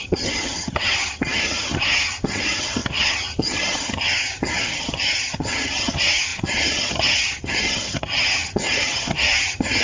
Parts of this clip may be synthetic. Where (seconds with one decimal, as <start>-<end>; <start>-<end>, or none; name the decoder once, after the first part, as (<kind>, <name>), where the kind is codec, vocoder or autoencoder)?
0.0-9.8 (vocoder, HiFi-GAN)